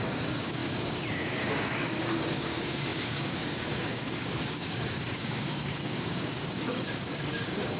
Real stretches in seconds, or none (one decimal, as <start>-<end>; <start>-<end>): none